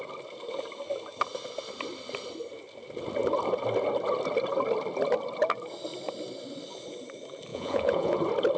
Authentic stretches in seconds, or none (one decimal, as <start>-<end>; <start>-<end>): 0.0-7.5; 8.2-8.6